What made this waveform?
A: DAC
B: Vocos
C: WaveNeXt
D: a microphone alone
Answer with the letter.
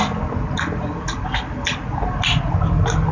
D